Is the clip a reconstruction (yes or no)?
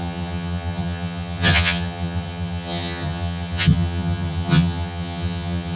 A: yes